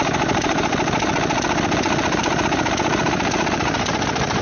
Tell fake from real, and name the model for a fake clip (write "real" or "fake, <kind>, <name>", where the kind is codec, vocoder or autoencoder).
fake, vocoder, BigVGAN v2